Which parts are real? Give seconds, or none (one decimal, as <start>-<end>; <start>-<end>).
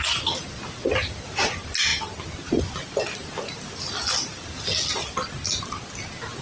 0.0-6.4